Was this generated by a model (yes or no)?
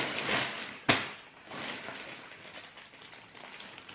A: no